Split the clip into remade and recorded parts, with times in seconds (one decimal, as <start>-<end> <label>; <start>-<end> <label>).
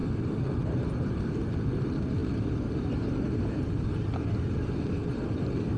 0.0-1.0 recorded; 1.0-2.2 remade; 2.2-4.5 recorded; 4.5-5.8 remade